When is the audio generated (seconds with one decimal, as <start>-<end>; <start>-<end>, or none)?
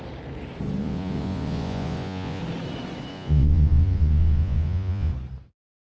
0.8-2.4; 3.1-5.1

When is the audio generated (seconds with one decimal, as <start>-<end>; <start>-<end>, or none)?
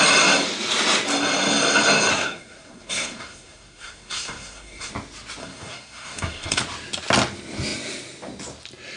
2.1-4.9; 5.4-6.6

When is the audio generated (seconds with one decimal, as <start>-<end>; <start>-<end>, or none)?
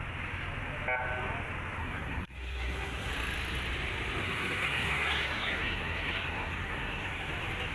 1.8-3.1; 4.2-7.3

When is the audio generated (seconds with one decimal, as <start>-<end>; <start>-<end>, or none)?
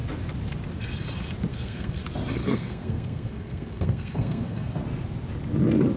1.5-2.0; 2.4-4.8